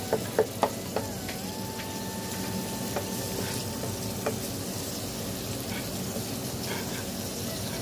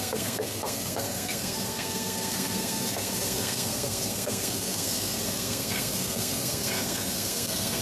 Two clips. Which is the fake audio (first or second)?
second